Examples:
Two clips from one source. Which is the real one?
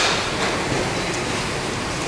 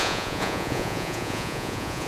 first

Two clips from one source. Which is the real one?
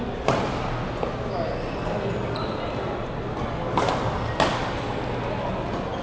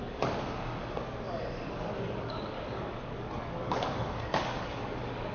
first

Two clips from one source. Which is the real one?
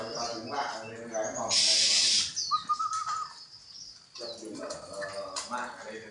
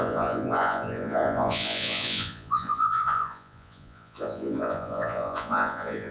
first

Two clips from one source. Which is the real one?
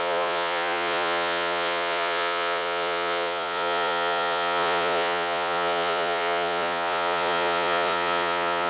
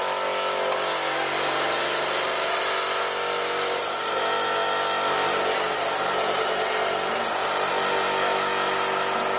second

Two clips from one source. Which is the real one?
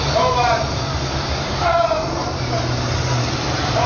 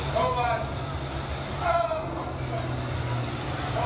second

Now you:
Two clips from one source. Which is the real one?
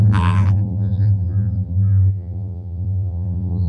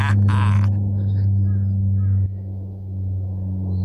second